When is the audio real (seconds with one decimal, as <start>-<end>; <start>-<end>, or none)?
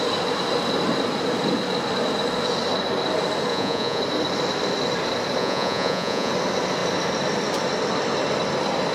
0.0-3.5; 4.0-5.4; 6.3-8.9